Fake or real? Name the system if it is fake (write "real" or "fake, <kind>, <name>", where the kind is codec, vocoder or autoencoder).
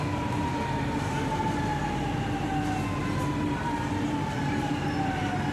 real